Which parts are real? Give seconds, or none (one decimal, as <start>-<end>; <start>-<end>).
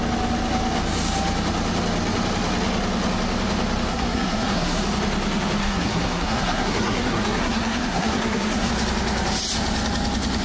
0.0-3.9; 4.8-5.6; 8.7-10.4